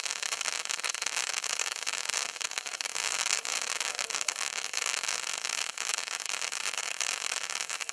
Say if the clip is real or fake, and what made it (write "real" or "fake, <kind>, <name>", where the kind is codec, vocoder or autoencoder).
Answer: fake, codec, DAC